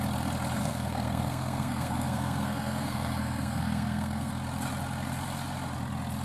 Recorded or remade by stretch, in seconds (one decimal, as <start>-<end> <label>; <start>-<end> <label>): 0.0-0.6 recorded; 0.6-4.3 remade; 4.3-6.2 recorded